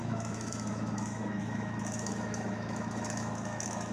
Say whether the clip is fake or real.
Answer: fake